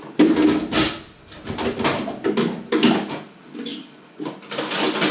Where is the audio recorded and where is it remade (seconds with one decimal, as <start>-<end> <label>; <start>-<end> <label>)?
0.0-5.1 recorded